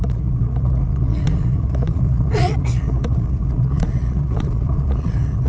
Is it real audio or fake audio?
fake